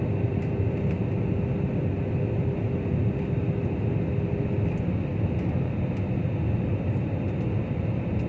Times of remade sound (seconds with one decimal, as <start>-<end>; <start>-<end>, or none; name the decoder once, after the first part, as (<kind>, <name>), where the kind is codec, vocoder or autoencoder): 2.9-3.4 (vocoder, BigVGAN v2)